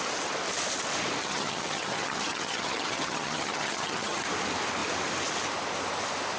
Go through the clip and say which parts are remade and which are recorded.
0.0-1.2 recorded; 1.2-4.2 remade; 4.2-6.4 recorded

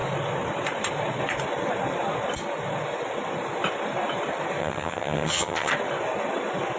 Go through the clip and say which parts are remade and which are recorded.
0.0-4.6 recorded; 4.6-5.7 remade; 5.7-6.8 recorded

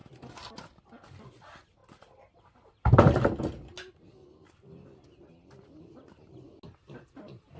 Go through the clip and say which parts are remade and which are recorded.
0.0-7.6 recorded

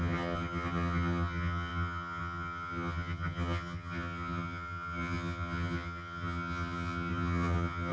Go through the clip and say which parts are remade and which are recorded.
0.0-7.9 remade

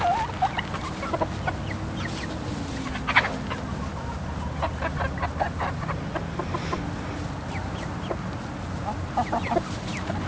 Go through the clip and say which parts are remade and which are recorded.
0.0-10.3 recorded